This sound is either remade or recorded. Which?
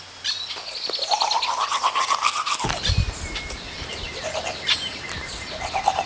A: recorded